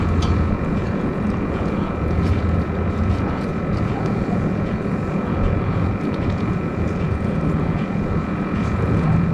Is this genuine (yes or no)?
no